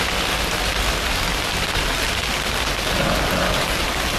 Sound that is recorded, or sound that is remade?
recorded